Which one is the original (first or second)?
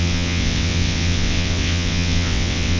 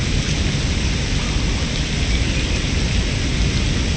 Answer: second